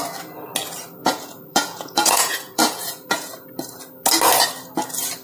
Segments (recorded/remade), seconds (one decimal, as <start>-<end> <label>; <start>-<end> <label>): 0.0-1.0 recorded; 1.0-3.3 remade; 3.3-5.2 recorded